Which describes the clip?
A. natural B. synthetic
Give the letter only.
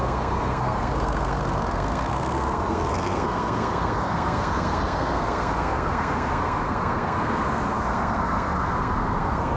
B